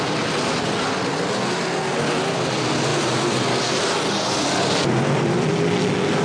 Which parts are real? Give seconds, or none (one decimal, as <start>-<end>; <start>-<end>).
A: 0.0-6.2